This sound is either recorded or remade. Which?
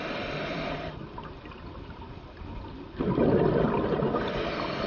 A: recorded